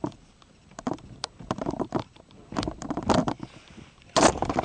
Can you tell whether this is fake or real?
real